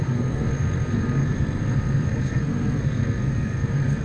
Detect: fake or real fake